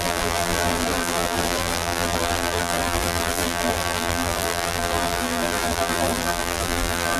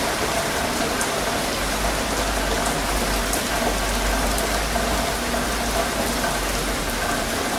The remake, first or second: first